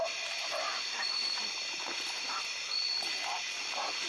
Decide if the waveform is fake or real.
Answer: fake